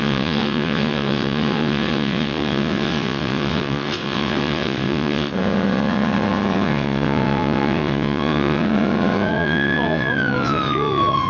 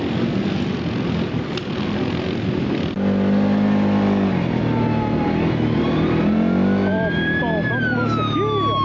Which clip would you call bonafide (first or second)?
second